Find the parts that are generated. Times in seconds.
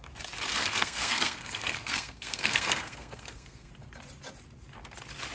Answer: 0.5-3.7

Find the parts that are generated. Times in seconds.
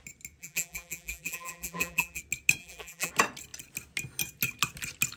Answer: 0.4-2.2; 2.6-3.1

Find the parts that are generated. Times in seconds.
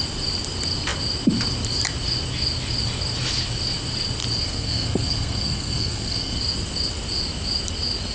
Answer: 4.4-6.4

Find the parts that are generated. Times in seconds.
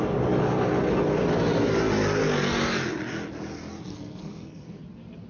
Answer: 3.9-4.8